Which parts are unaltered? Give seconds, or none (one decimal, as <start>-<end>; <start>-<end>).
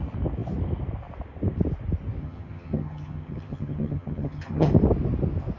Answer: 0.0-2.2; 4.7-5.6